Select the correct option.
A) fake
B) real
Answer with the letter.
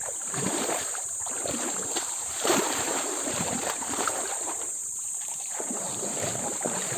A